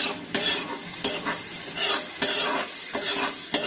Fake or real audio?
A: real